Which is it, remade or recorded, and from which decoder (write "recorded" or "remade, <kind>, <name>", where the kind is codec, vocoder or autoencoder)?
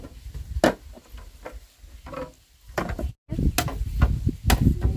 recorded